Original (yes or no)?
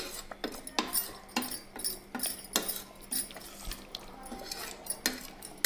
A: yes